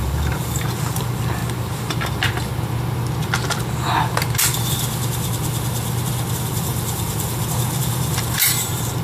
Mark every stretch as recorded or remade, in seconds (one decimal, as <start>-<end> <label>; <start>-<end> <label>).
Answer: 0.0-1.4 remade; 1.4-6.3 recorded; 6.3-9.0 remade